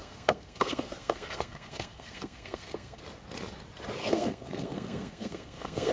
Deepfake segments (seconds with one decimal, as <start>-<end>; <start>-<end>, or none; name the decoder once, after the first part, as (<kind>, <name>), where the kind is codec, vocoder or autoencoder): 0.0-3.0 (codec, SNAC); 4.0-5.9